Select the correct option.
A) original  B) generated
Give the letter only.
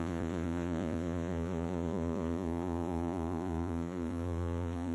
B